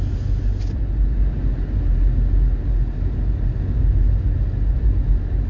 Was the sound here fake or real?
real